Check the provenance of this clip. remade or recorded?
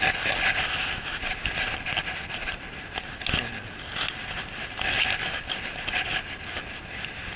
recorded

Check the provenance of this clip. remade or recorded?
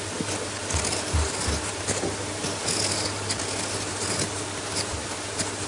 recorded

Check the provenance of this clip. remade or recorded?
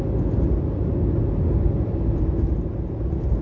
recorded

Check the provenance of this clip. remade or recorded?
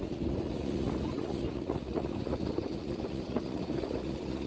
remade